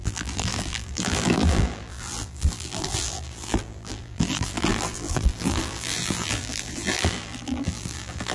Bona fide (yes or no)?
no